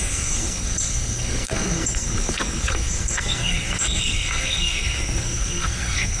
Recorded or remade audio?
remade